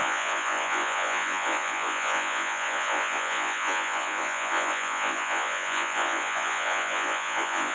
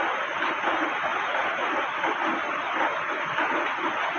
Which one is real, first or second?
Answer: second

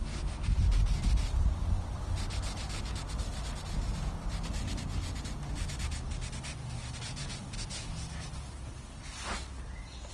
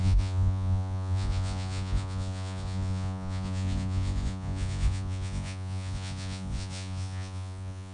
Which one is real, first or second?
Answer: first